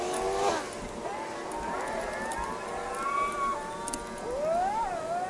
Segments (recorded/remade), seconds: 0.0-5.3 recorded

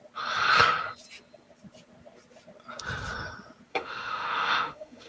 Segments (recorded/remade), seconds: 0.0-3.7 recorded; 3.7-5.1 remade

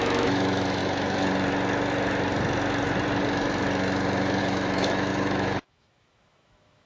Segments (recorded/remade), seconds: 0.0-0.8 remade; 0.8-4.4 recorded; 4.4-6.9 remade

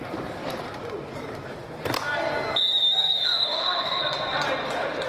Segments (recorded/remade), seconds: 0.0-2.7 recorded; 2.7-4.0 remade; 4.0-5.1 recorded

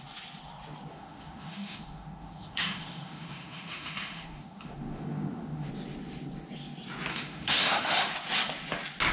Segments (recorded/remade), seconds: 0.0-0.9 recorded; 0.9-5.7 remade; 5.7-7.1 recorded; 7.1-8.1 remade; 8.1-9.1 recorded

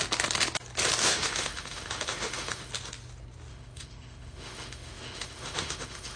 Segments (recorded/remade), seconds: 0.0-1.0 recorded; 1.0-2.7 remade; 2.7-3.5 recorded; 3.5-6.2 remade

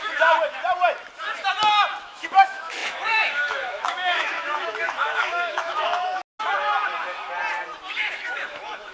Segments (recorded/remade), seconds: 0.0-0.6 remade; 0.6-2.0 recorded; 2.0-6.2 remade; 6.2-7.9 recorded; 7.9-8.9 remade

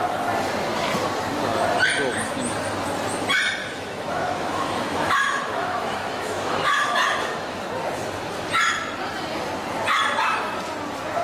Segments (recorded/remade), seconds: 0.0-3.6 recorded; 3.6-7.6 remade; 7.6-11.2 recorded